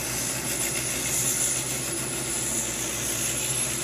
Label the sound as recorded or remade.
recorded